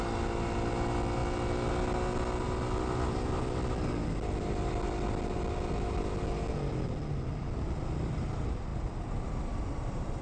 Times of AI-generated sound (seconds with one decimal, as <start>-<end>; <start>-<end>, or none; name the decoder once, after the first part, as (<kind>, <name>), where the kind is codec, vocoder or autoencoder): none